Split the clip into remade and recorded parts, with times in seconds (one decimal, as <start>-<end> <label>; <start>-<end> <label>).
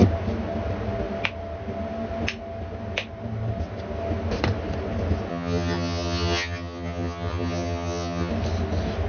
0.0-5.3 recorded; 5.3-8.3 remade; 8.3-9.1 recorded